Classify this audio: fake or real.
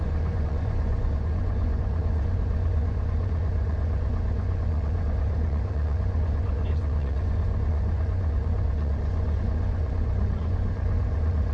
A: fake